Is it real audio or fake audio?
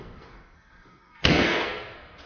fake